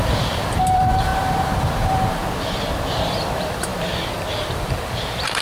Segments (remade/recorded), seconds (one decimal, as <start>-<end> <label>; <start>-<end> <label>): 0.0-2.2 remade; 2.2-3.1 recorded; 3.1-3.7 remade; 3.7-4.3 recorded; 4.3-5.4 remade